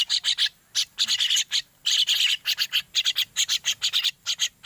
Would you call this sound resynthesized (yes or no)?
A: no